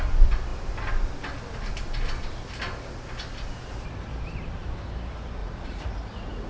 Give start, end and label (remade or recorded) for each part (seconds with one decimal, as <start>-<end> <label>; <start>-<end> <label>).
0.0-5.4 recorded; 5.4-6.5 remade

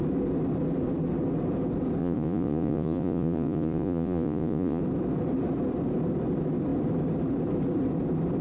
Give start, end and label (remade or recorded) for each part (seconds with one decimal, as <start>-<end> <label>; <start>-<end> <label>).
0.0-2.0 recorded; 2.0-4.8 remade; 4.8-8.4 recorded

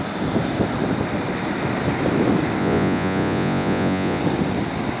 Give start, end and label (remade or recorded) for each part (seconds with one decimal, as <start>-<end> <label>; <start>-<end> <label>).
0.0-2.6 recorded; 2.6-4.2 remade; 4.2-5.0 recorded

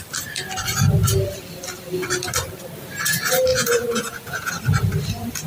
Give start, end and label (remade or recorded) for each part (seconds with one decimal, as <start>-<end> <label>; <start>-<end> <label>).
0.0-3.5 recorded; 3.5-4.5 remade; 4.5-5.5 recorded

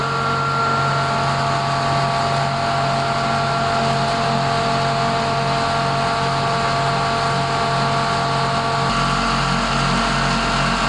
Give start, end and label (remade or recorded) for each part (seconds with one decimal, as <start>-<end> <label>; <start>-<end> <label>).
0.0-10.9 recorded

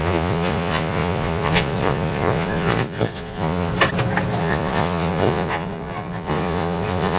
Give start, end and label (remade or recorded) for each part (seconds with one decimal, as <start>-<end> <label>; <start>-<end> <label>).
0.0-3.7 remade; 3.7-4.4 recorded; 4.4-7.2 remade

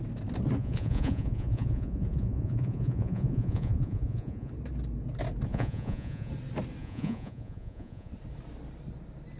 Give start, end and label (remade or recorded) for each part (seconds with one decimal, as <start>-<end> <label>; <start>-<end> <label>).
0.0-0.6 recorded; 0.6-4.5 remade; 4.5-5.5 recorded; 5.5-6.3 remade; 6.3-6.8 recorded; 6.8-8.1 remade; 8.1-9.4 recorded